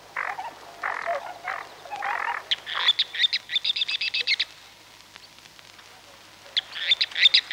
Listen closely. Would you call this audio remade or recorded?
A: recorded